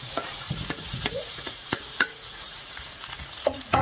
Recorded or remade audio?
remade